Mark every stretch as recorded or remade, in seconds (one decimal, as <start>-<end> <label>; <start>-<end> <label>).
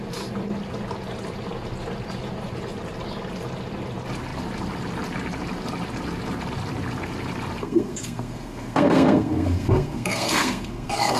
0.0-7.6 recorded; 7.6-11.2 remade